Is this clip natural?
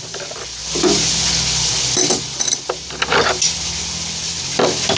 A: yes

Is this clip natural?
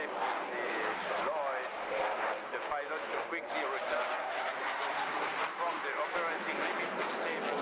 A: yes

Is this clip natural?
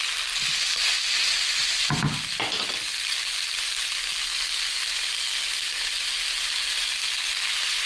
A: yes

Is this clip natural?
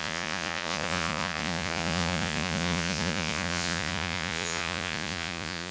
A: no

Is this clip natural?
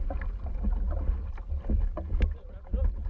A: yes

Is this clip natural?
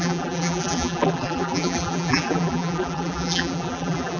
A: no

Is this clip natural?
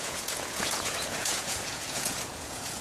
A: no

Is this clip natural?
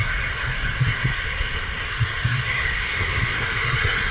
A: no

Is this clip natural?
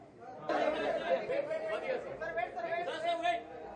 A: yes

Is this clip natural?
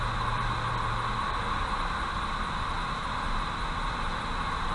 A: yes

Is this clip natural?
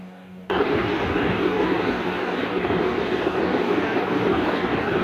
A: no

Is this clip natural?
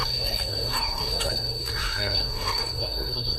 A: no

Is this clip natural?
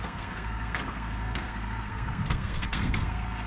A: no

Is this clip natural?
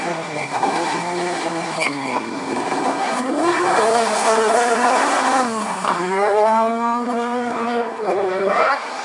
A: no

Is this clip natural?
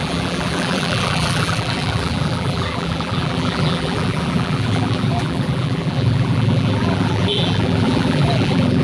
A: no